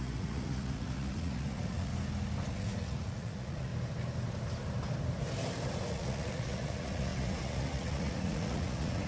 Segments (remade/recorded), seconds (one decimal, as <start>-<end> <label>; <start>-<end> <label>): 0.0-1.9 remade; 1.9-2.5 recorded; 2.5-3.7 remade; 3.7-5.9 recorded; 5.9-9.1 remade